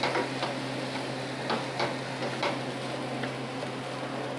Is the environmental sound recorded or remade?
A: recorded